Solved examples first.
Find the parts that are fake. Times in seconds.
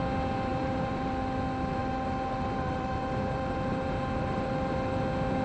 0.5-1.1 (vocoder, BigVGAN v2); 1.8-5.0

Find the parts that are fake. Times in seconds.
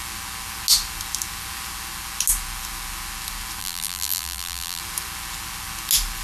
3.6-4.8 (vocoder, BigVGAN v2)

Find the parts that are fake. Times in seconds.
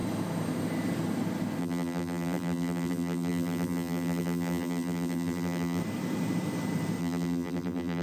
1.6-5.8 (vocoder, BigVGAN v2); 7.0-8.0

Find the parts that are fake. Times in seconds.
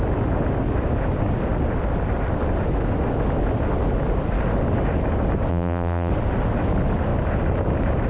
5.5-6.1 (vocoder, BigVGAN v2)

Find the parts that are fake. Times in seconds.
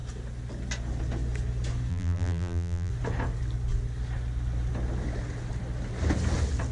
1.9-2.9 (vocoder, BigVGAN v2)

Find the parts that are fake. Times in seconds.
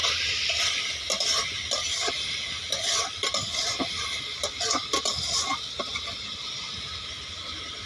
0.0-0.6 (vocoder, BigVGAN v2)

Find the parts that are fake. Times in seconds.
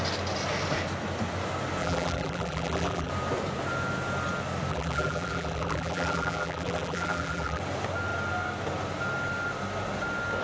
1.8-3.1 (vocoder, BigVGAN v2); 4.7-7.6